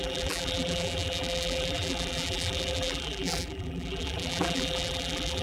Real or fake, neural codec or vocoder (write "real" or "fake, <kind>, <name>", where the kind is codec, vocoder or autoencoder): fake, vocoder, BigVGAN v2